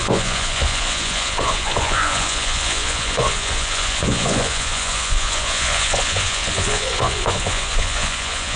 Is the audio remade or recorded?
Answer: remade